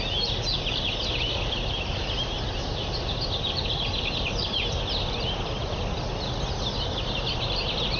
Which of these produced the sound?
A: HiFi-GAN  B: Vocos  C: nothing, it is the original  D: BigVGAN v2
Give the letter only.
C